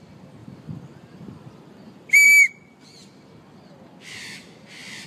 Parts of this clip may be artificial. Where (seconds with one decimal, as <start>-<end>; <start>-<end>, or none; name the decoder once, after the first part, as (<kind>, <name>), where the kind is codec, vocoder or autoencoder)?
0.4-3.5 (vocoder, BigVGAN v2)

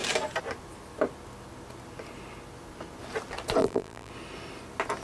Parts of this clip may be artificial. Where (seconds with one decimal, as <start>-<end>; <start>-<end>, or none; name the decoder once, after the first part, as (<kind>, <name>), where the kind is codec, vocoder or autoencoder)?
3.6-4.1 (vocoder, BigVGAN v2)

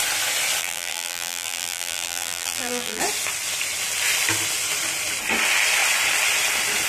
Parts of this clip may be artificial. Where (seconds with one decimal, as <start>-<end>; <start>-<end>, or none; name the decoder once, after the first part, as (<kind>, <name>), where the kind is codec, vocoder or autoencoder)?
0.6-3.0 (vocoder, BigVGAN v2)

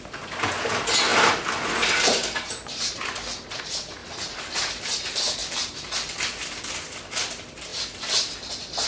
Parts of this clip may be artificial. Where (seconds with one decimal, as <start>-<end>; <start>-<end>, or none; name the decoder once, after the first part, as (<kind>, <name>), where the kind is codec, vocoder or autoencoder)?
4.0-4.7 (vocoder, BigVGAN v2); 5.4-6.7

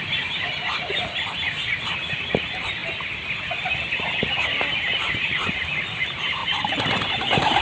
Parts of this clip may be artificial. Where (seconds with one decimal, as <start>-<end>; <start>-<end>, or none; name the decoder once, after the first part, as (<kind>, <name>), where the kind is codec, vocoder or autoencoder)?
0.0-2.8 (vocoder, BigVGAN v2); 4.7-6.4; 7.1-7.6

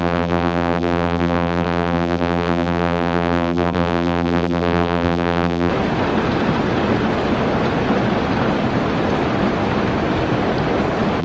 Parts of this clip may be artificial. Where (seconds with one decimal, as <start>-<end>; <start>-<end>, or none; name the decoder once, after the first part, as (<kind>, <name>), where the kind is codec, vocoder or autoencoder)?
0.0-5.7 (vocoder, BigVGAN v2)

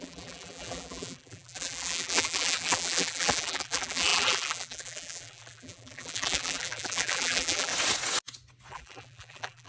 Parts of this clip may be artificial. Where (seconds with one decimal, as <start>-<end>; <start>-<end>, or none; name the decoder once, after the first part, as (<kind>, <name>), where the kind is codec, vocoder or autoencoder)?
0.0-7.7 (vocoder, BigVGAN v2); 8.7-9.7

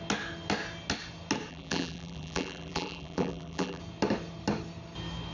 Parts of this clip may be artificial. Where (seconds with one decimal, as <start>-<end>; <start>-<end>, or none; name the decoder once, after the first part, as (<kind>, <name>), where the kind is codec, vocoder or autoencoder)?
1.5-3.8 (vocoder, BigVGAN v2)